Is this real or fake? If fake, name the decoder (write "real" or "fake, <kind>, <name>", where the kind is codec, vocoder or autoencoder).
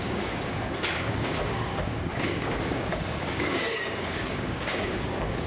fake, codec, DAC